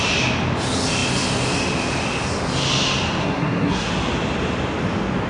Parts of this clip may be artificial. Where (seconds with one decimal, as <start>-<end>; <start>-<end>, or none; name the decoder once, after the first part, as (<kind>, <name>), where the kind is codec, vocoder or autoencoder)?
3.2-3.9 (codec, SNAC)